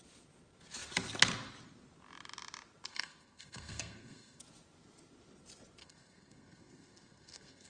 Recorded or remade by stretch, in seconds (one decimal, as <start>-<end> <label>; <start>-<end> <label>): 0.0-2.9 recorded; 2.9-4.4 remade; 4.4-5.8 recorded; 5.8-7.7 remade